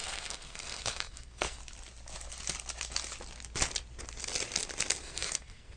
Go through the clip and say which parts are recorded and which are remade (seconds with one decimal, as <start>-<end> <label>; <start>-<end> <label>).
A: 0.0-1.6 remade; 1.6-5.0 recorded; 5.0-5.8 remade